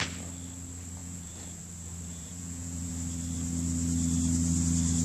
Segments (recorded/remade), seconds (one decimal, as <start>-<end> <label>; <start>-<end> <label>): 0.0-1.0 recorded; 1.0-1.6 remade; 1.6-2.1 recorded; 2.1-2.9 remade; 2.9-5.0 recorded